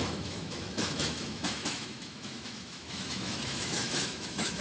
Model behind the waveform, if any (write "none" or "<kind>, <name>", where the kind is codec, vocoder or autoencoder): autoencoder, DAC-VAE